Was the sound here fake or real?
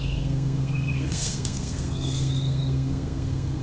fake